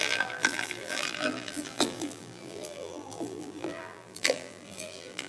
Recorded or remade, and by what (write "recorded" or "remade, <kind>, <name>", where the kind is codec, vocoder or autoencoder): remade, vocoder, BigVGAN v2